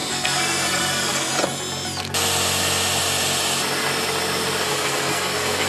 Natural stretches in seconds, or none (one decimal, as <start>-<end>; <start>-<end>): 1.3-4.7